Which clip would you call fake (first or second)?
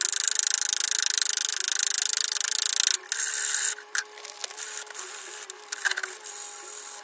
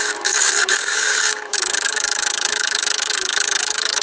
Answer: second